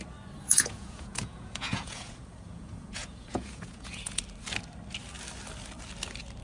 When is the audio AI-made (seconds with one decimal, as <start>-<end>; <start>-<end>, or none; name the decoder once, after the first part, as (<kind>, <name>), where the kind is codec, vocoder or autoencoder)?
0.4-4.2 (vocoder, Vocos)